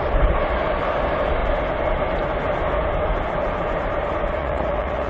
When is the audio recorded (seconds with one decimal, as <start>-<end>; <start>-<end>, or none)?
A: 0.0-4.4